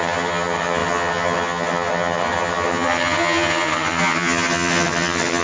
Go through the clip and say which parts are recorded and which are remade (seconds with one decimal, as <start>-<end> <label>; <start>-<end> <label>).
0.0-5.4 remade